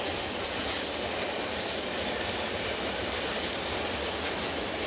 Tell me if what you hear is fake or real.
real